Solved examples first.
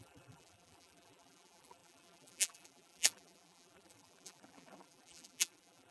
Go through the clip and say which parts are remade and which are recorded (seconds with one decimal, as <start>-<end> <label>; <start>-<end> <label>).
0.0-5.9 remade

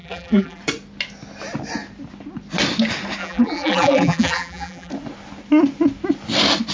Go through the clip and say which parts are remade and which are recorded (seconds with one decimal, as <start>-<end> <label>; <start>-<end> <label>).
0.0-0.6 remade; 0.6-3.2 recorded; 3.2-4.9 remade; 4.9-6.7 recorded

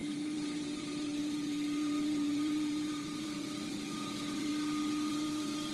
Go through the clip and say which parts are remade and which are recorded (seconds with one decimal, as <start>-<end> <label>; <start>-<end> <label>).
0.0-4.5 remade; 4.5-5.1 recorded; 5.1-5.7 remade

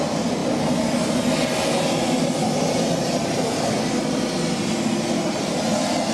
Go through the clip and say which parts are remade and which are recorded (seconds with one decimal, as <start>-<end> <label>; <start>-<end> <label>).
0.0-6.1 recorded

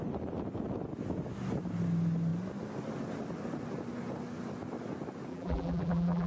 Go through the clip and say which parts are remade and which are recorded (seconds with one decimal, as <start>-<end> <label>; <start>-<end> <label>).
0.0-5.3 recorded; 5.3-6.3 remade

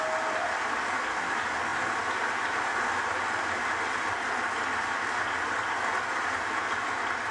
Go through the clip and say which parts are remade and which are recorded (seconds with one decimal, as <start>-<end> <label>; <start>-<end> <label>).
0.0-7.3 recorded